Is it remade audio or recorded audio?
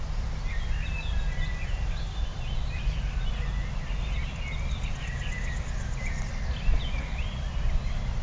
recorded